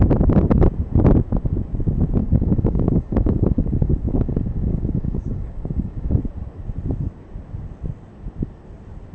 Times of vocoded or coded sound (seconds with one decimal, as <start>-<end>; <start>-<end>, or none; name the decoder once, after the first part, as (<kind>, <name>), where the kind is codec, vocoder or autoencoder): 2.2-6.2 (codec, DAC)